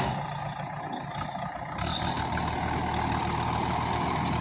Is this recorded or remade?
recorded